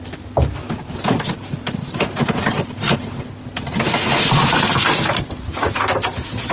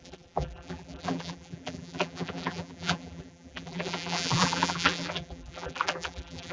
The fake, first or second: second